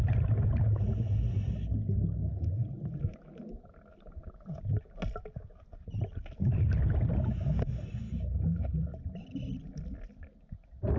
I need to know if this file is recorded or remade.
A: recorded